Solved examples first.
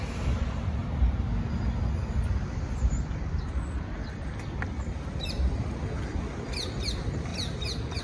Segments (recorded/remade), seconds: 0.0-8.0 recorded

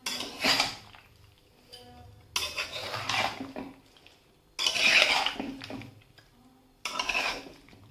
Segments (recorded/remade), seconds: 0.0-7.9 recorded

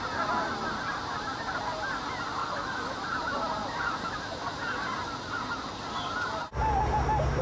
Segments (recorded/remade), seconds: 0.0-2.4 recorded; 2.4-3.0 remade; 3.0-7.4 recorded

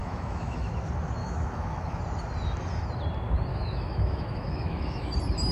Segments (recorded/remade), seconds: 0.0-0.7 remade; 0.7-1.2 recorded; 1.2-2.0 remade; 2.0-3.5 recorded; 3.5-5.1 remade; 5.1-5.5 recorded

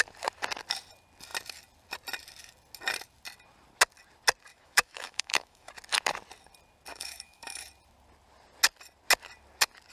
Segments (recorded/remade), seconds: 0.0-4.5 recorded; 4.5-5.7 remade; 5.7-6.9 recorded; 6.9-7.6 remade; 7.6-9.9 recorded

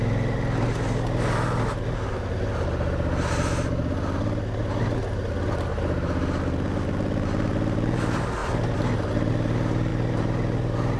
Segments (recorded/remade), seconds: 0.0-11.0 recorded